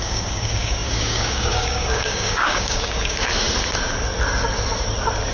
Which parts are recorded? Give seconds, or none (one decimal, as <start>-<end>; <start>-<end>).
3.3-5.3